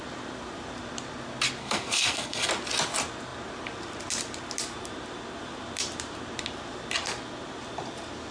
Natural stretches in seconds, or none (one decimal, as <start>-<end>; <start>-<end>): 0.0-1.6; 2.5-8.3